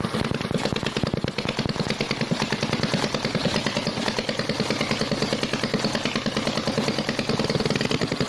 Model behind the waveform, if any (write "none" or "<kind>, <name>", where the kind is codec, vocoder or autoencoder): none